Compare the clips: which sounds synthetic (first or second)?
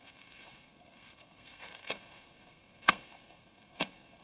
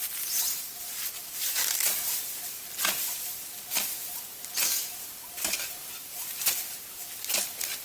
first